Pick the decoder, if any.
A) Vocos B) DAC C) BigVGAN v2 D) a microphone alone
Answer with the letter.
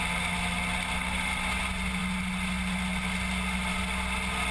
D